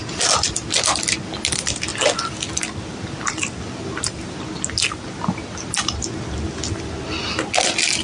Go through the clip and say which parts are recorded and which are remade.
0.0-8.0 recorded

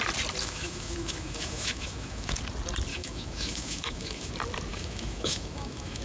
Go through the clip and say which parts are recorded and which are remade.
0.0-0.4 recorded; 0.4-2.4 remade; 2.4-2.9 recorded; 2.9-4.3 remade; 4.3-4.7 recorded; 4.7-6.0 remade

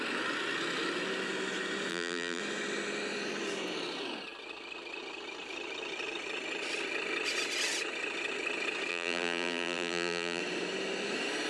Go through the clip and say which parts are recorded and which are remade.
0.0-1.9 recorded; 1.9-2.4 remade; 2.4-8.9 recorded; 8.9-10.4 remade; 10.4-11.5 recorded

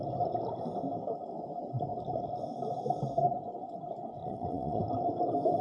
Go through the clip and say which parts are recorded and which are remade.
0.0-4.2 recorded; 4.2-4.8 remade; 4.8-5.6 recorded

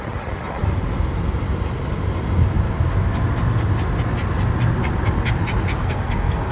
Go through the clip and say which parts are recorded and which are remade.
0.0-5.8 recorded; 5.8-6.5 remade

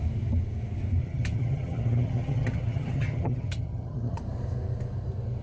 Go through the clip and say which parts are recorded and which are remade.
0.0-1.0 recorded; 1.0-4.2 remade; 4.2-5.4 recorded

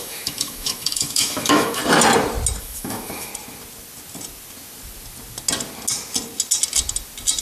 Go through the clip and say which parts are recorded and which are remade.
0.0-1.8 remade; 1.8-2.6 recorded; 2.6-3.3 remade; 3.3-7.4 recorded